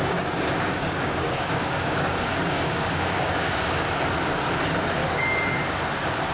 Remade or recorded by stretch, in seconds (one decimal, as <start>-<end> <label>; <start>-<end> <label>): 0.0-3.8 remade; 3.8-5.0 recorded; 5.0-5.8 remade; 5.8-6.3 recorded